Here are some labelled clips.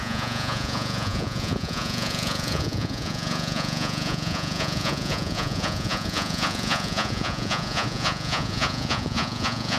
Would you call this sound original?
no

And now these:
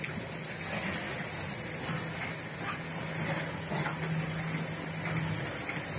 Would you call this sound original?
yes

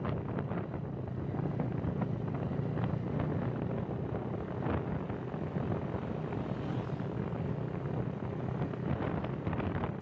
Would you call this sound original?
yes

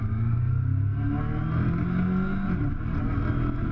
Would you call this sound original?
yes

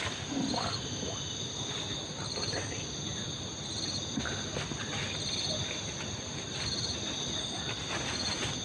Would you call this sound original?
yes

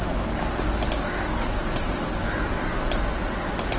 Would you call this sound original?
yes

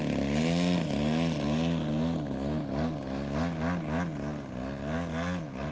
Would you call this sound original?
yes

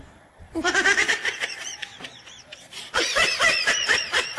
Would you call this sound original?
no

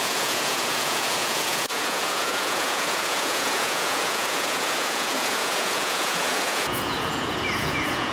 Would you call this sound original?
no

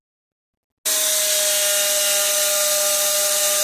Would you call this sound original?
yes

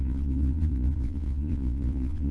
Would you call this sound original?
no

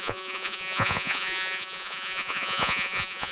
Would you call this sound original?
no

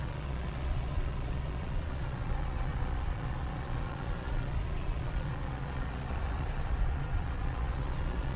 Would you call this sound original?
no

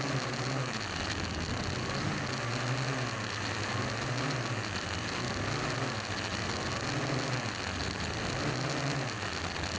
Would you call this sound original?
yes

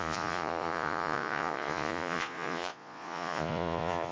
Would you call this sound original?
no